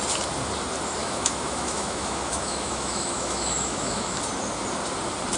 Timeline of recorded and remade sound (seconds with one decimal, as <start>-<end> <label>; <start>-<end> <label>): 0.0-1.0 recorded; 1.0-4.2 remade; 4.2-5.4 recorded